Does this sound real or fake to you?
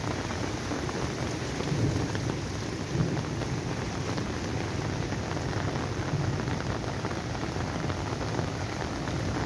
real